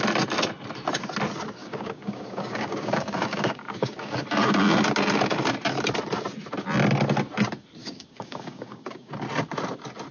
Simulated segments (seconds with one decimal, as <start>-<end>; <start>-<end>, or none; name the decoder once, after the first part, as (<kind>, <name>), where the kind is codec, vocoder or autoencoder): 1.6-4.2 (codec, DAC); 7.8-9.1